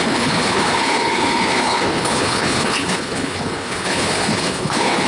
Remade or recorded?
remade